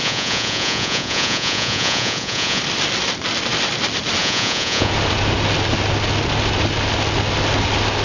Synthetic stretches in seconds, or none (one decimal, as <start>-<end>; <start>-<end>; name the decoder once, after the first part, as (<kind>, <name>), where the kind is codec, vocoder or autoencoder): 0.0-2.6 (vocoder, Vocos); 4.2-4.9